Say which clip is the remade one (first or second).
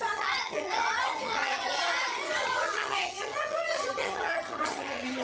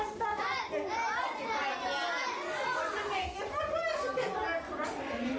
first